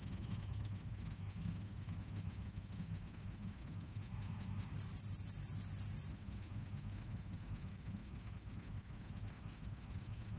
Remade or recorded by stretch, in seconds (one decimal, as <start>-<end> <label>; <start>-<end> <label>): 0.0-4.7 remade; 4.7-6.1 recorded; 6.1-10.4 remade